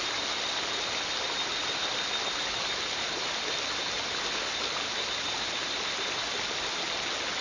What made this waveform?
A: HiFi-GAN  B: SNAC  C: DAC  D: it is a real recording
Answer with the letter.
D